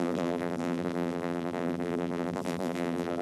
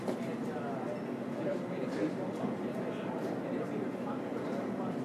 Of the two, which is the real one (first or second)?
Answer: second